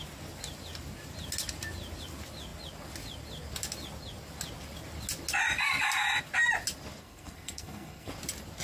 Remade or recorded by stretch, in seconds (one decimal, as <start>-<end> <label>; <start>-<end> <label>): 0.0-7.0 recorded; 7.0-8.1 remade; 8.1-8.6 recorded